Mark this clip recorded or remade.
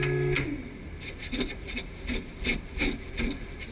recorded